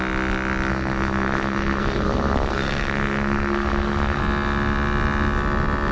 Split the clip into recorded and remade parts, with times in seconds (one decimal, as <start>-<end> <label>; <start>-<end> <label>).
0.0-0.7 recorded; 0.7-4.2 remade; 4.2-5.9 recorded